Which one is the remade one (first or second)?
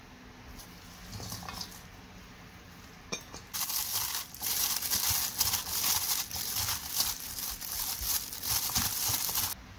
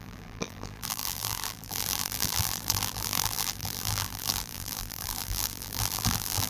second